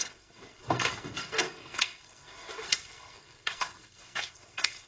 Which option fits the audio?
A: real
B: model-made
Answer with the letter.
B